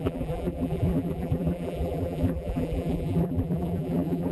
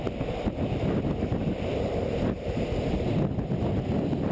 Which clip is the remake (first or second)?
first